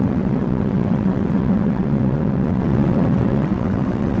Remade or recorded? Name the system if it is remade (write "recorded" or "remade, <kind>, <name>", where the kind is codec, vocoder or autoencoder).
remade, vocoder, WaveNeXt